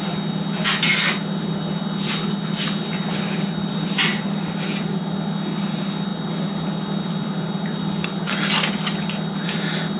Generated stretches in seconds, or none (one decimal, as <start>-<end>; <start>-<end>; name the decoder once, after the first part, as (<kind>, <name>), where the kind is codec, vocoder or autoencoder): none